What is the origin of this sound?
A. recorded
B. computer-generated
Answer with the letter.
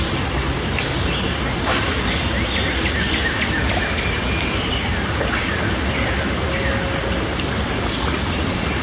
A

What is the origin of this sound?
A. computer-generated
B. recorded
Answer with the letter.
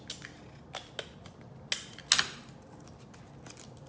B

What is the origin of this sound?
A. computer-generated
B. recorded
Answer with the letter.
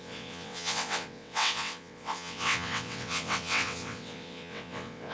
A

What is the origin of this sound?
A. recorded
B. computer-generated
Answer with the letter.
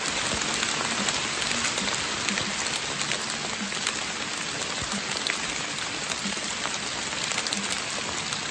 A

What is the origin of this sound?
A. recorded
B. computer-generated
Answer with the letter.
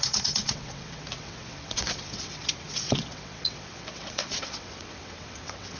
B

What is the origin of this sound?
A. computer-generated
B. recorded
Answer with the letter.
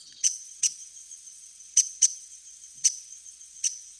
A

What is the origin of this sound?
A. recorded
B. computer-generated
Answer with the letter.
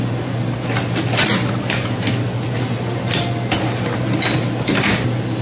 A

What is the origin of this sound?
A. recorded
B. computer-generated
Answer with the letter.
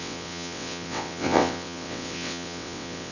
B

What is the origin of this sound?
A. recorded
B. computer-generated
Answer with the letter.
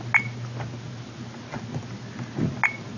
A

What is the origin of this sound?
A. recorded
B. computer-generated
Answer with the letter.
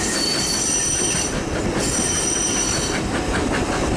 A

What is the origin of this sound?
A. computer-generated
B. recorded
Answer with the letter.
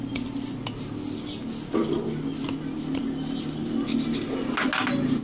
B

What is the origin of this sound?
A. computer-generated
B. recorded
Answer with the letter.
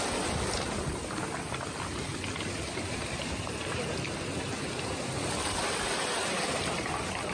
B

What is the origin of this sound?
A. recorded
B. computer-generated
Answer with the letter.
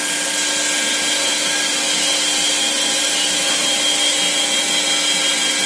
A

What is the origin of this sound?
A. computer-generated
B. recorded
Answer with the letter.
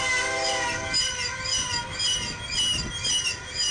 B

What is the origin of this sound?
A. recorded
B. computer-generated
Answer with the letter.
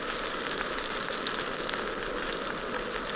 A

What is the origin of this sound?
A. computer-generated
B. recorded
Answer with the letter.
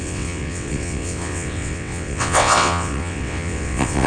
A